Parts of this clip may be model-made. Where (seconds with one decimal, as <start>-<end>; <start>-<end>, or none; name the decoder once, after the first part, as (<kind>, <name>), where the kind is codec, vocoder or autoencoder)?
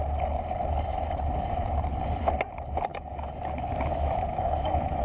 2.9-5.0 (autoencoder, DAC-VAE)